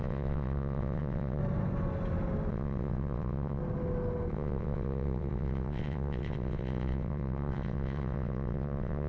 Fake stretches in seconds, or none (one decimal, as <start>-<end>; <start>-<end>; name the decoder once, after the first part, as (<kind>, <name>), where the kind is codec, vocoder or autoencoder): 0.0-1.4 (vocoder, WaveNeXt); 2.5-3.6; 4.3-9.1

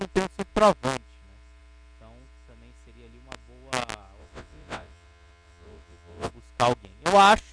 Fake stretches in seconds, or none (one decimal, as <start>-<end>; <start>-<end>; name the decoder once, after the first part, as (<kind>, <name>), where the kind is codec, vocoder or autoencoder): 4.2-6.3 (vocoder, WaveNeXt)